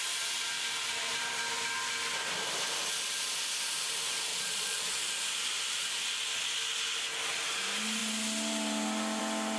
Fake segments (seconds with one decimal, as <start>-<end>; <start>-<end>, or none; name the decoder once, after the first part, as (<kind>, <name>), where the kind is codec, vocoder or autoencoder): 4.3-4.9 (vocoder, Vocos)